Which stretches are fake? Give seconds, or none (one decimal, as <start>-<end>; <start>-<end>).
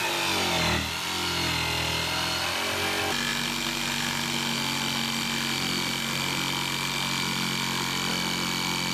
none